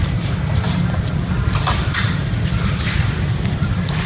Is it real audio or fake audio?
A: fake